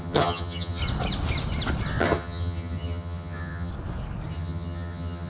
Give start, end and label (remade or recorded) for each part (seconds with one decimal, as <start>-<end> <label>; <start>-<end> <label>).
0.0-0.8 remade; 0.8-2.0 recorded; 2.0-3.7 remade; 3.7-4.3 recorded; 4.3-5.3 remade